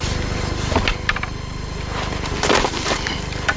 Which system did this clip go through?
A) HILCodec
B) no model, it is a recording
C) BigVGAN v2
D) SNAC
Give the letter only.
B